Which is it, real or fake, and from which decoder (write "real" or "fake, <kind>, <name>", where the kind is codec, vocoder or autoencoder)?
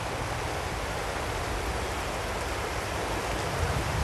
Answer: real